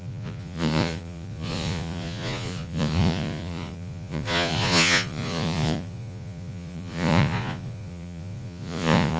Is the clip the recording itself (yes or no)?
no